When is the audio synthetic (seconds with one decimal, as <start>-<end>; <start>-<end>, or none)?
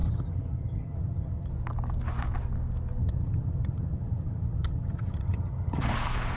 0.0-1.5; 3.0-5.9